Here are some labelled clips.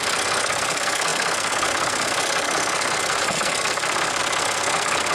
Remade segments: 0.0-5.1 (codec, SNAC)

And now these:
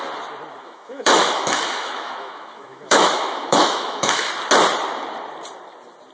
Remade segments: 0.6-4.3 (autoencoder, DAC-VAE)

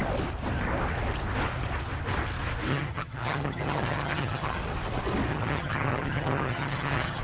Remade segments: 2.7-4.6 (vocoder, HiFi-GAN); 5.3-7.2

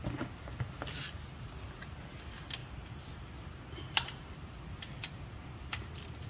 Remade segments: none

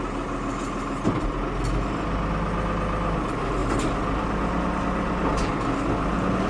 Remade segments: none

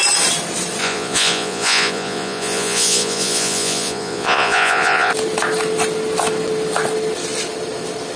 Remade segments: 0.8-5.1 (vocoder, Vocos)

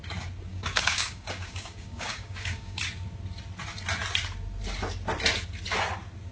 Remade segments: 0.5-2.8 (codec, DAC)